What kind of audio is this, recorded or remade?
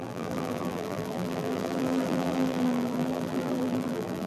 remade